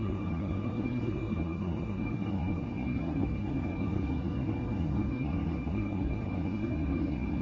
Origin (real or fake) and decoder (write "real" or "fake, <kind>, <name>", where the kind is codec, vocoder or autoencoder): fake, codec, SNAC